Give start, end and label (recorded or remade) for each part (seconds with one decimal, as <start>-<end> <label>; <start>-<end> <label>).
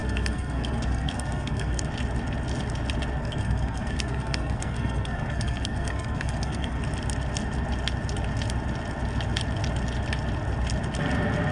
0.0-1.8 remade; 1.8-3.2 recorded; 3.2-6.8 remade; 6.8-11.5 recorded